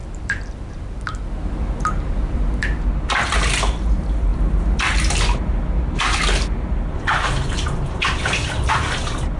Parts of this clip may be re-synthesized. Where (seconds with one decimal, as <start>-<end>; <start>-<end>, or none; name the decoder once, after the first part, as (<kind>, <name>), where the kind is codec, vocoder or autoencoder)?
0.0-3.2 (vocoder, BigVGAN v2)